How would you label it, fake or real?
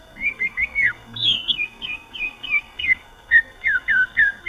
fake